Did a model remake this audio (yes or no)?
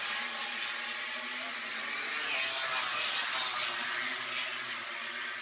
no